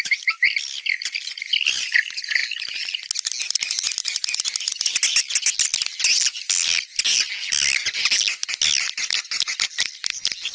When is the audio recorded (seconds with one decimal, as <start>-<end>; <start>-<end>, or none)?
0.0-10.5